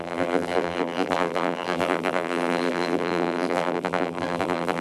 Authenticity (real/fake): fake